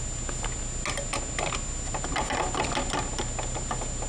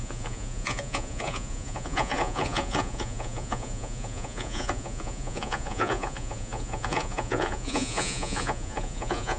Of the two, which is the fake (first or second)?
second